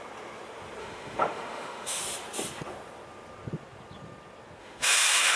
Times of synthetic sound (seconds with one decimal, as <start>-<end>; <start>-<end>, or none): 0.8-2.0; 4.6-5.4